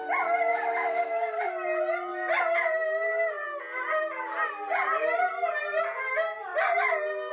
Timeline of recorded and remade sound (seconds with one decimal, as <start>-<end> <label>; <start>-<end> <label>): 0.0-0.5 recorded; 0.5-1.4 remade; 1.4-7.3 recorded